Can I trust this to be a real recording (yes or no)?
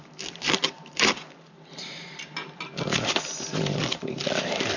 yes